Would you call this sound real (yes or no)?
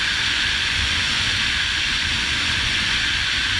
no